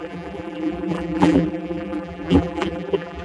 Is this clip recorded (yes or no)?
no